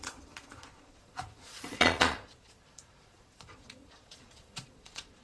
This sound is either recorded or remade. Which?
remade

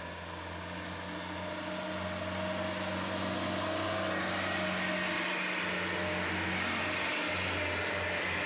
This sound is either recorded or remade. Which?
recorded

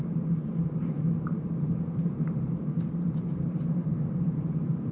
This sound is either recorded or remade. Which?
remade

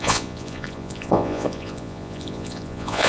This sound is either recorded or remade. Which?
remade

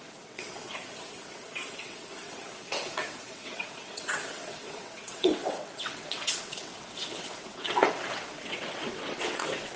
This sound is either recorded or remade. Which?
remade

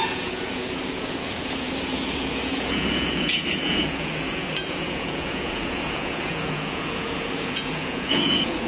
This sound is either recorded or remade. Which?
remade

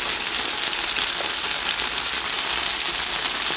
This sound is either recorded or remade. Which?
recorded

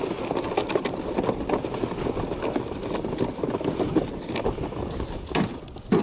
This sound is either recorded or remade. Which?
recorded